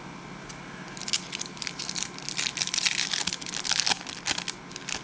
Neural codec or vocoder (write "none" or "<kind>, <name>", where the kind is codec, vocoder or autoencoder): none